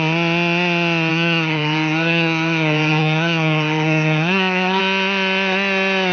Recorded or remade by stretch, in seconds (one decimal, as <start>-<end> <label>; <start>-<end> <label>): 0.0-1.1 recorded; 1.1-4.8 remade; 4.8-6.1 recorded